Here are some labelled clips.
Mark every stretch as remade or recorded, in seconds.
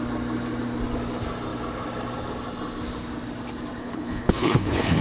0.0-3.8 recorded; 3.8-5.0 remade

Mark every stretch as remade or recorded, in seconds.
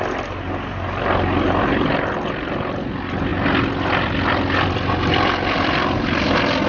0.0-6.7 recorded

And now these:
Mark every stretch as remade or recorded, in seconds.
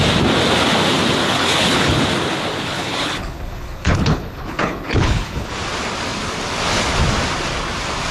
0.0-1.2 recorded; 1.2-2.0 remade; 2.0-2.5 recorded; 2.5-5.5 remade; 5.5-8.1 recorded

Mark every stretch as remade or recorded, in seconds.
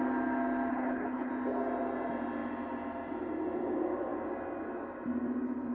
0.0-0.7 recorded; 0.7-1.3 remade; 1.3-5.7 recorded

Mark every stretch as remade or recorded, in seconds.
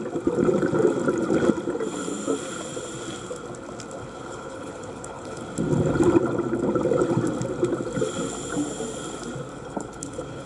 0.0-4.0 recorded; 4.0-5.4 remade; 5.4-9.5 recorded; 9.5-10.5 remade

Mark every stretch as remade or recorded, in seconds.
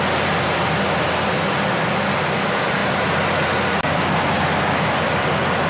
0.0-5.7 recorded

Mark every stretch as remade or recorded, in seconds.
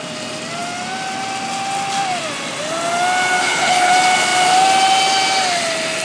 0.0-3.4 recorded; 3.4-3.9 remade; 3.9-6.0 recorded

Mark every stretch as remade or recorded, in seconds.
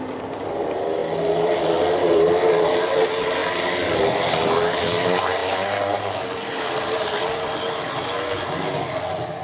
0.0-9.4 recorded